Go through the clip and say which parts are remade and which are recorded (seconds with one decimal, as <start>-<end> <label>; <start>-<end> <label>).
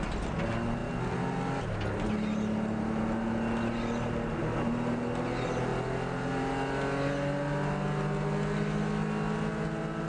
0.0-10.1 recorded